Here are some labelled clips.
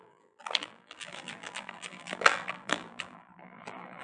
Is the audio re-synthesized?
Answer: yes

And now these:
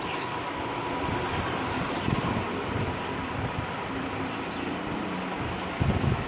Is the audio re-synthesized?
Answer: no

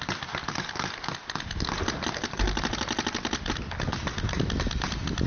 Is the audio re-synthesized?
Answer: no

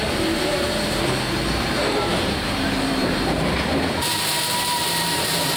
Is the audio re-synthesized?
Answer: yes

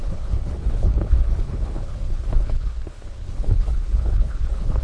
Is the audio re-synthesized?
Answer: yes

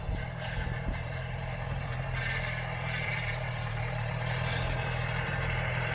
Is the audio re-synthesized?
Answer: yes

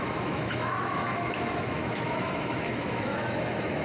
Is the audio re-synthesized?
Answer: yes